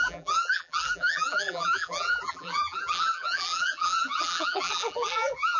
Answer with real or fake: fake